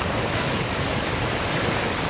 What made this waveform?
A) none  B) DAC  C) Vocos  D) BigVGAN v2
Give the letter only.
B